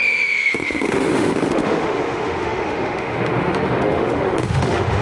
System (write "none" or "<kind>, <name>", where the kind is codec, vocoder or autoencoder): autoencoder, DAC-VAE